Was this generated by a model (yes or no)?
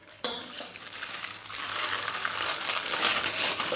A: yes